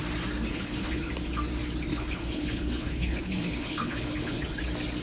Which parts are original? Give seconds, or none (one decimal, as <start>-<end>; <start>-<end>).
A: 0.0-0.5; 1.1-1.9; 4.6-5.0